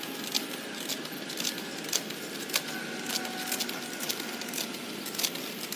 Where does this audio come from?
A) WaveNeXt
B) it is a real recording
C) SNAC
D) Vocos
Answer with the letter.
B